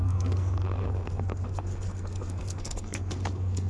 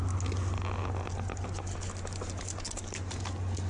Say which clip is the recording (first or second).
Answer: second